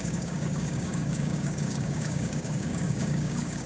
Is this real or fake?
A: fake